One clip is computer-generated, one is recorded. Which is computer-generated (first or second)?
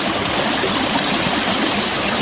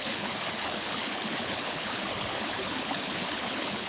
second